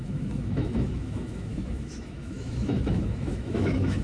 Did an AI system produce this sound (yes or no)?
yes